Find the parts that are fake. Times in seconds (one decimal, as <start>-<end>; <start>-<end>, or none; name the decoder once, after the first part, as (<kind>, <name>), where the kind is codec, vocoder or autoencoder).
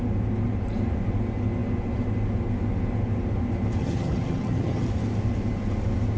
3.8-4.9 (vocoder, HiFi-GAN)